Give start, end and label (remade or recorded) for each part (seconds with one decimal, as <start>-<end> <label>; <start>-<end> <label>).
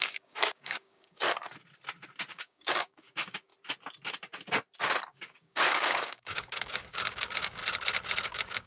0.0-1.2 remade; 1.2-2.3 recorded; 2.3-3.5 remade; 3.5-5.1 recorded; 5.1-7.6 remade; 7.6-8.2 recorded; 8.2-8.7 remade